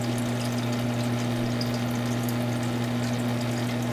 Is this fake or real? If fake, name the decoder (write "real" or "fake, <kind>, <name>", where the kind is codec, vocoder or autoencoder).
real